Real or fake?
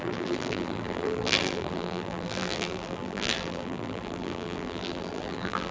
fake